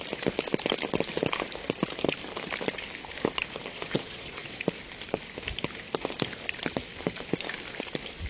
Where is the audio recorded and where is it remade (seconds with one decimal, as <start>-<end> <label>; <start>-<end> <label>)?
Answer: 0.0-3.7 recorded; 3.7-4.6 remade; 4.6-8.3 recorded

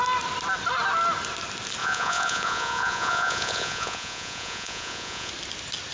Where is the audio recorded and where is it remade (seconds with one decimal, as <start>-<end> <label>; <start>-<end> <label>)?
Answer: 0.0-1.8 recorded; 1.8-5.3 remade; 5.3-5.9 recorded

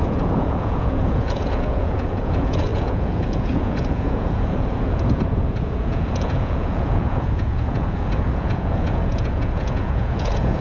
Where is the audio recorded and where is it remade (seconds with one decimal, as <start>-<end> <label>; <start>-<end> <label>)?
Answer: 0.0-10.6 remade

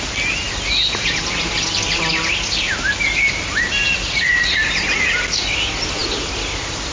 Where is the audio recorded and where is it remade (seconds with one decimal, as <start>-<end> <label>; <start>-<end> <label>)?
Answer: 0.0-6.9 recorded